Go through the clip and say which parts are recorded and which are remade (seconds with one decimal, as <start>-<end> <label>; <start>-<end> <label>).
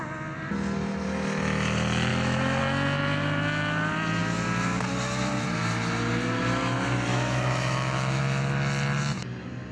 0.0-2.1 recorded; 2.1-2.6 remade; 2.6-7.1 recorded; 7.1-8.2 remade; 8.2-9.7 recorded